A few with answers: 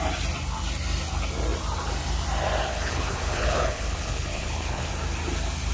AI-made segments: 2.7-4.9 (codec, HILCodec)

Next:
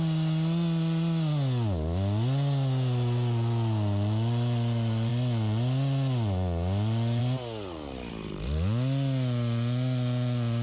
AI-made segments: none

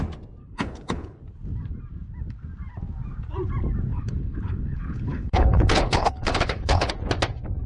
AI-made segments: 0.4-1.2 (codec, HILCodec); 3.9-6.9

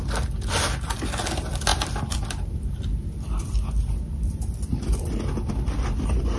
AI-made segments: none